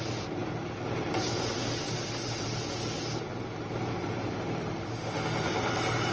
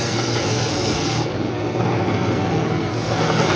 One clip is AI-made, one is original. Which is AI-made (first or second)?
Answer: second